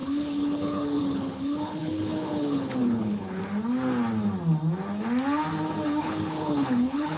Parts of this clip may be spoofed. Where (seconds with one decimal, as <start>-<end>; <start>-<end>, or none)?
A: 0.0-3.4; 6.0-7.2